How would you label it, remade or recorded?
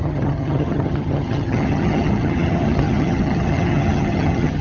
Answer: remade